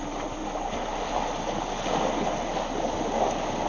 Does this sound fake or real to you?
real